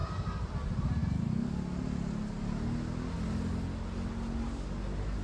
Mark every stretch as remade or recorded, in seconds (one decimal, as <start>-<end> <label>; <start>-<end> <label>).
0.0-5.2 recorded